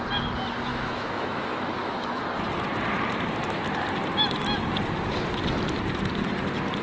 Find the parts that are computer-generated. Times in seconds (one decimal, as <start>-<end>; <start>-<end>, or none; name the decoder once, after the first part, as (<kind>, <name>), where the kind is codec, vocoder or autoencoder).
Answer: 0.7-2.2 (autoencoder, DAC-VAE)